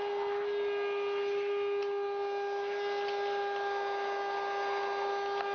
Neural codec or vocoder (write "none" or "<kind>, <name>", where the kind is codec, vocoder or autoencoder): none